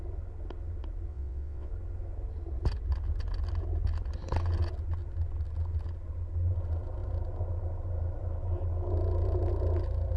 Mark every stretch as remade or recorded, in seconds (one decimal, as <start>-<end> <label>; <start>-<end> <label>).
0.0-1.1 recorded; 1.1-1.7 remade; 1.7-10.2 recorded